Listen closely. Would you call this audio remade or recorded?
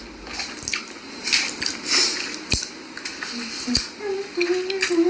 recorded